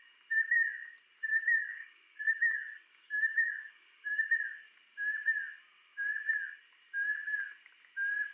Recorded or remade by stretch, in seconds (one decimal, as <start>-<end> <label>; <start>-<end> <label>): 0.0-1.3 recorded; 1.3-4.3 remade; 4.3-8.3 recorded